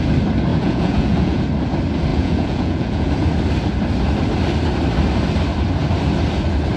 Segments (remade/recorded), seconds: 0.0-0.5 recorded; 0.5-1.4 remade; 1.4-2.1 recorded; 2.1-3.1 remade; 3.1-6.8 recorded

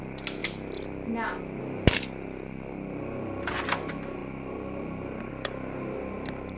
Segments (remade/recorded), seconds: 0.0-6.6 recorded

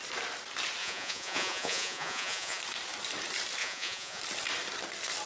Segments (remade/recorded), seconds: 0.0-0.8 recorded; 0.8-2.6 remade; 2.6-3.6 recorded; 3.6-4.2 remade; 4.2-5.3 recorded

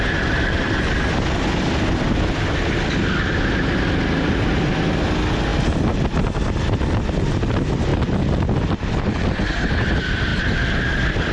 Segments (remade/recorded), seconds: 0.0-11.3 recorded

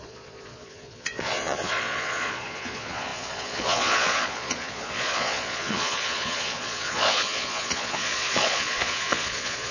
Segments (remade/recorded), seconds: 0.0-9.7 remade

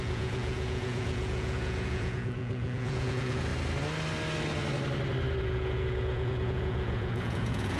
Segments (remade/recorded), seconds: 0.0-3.5 remade; 3.5-5.4 recorded; 5.4-7.8 remade

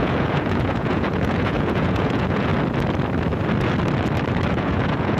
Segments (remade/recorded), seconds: 0.0-2.5 remade; 2.5-4.5 recorded; 4.5-5.2 remade